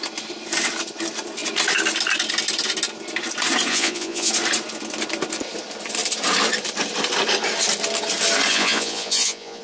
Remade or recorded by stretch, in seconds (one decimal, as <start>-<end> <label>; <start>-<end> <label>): 0.0-3.7 recorded; 3.7-4.3 remade; 4.3-8.5 recorded; 8.5-9.6 remade